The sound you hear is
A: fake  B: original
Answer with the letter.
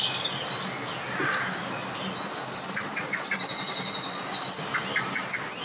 B